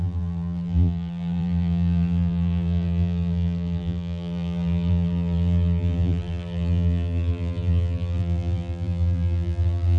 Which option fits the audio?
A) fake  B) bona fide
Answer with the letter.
A